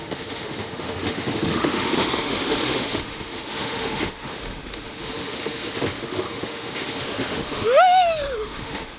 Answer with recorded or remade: remade